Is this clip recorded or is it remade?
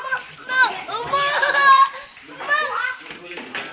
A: remade